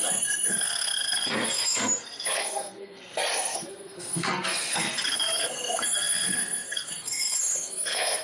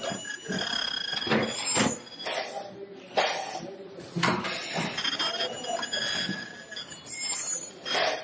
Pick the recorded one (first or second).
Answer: second